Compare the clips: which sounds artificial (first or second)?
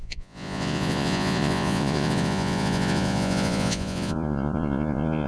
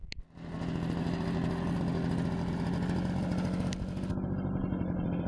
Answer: first